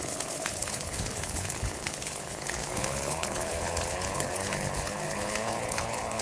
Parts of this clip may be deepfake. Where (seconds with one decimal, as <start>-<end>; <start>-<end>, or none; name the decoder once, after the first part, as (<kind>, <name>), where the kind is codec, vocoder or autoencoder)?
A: 0.0-6.2 (codec, HILCodec)